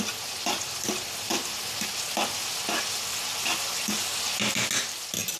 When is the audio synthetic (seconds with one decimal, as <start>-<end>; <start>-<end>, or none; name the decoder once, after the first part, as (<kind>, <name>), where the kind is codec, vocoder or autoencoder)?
none